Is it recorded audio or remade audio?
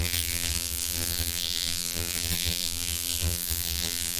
remade